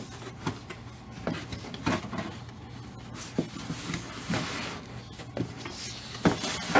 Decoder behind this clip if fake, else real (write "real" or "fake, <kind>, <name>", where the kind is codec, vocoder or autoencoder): real